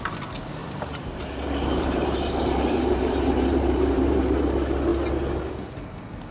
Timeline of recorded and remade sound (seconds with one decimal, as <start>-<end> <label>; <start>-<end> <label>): 0.0-0.6 recorded; 0.6-4.4 remade; 4.4-6.3 recorded